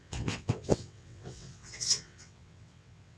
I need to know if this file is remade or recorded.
remade